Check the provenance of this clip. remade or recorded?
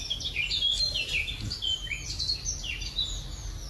recorded